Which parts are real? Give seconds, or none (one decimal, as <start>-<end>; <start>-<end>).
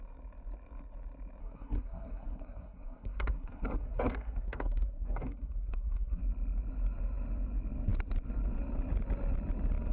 0.0-1.4; 6.2-9.9